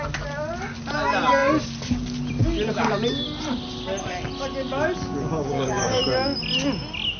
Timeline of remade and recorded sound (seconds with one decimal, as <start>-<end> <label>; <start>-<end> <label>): 0.0-5.3 recorded; 5.3-6.0 remade; 6.0-7.2 recorded